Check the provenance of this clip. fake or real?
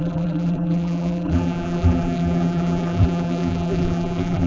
fake